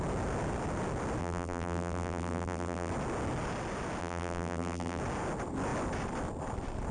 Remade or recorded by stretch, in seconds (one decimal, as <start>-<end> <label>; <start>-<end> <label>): 0.0-1.2 recorded; 1.2-2.9 remade; 2.9-4.0 recorded; 4.0-5.0 remade; 5.0-6.9 recorded

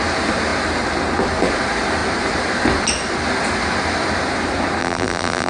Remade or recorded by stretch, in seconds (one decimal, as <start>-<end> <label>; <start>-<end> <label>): 0.0-4.8 recorded; 4.8-5.5 remade

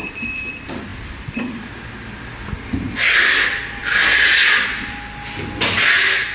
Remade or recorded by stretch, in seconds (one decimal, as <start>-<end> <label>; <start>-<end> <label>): 0.0-0.5 remade; 0.5-0.9 recorded; 0.9-1.7 remade; 1.7-6.3 recorded

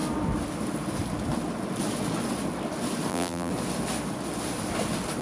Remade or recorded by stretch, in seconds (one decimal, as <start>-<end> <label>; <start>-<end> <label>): 0.0-3.1 recorded; 3.1-3.5 remade; 3.5-5.2 recorded

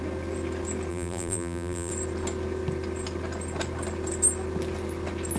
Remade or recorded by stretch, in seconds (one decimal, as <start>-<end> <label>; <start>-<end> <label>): 0.0-0.9 recorded; 0.9-1.9 remade; 1.9-5.4 recorded

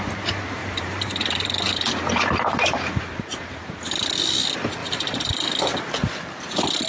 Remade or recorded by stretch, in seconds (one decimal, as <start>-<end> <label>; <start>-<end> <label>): 0.0-0.6 recorded; 0.6-3.8 remade; 3.8-4.8 recorded; 4.8-5.7 remade; 5.7-6.9 recorded

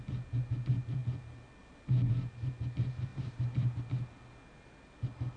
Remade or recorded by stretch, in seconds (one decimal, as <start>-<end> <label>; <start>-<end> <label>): 0.0-3.1 recorded; 3.1-3.8 remade; 3.8-5.4 recorded